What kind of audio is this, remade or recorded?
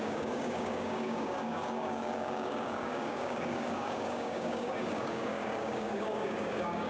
remade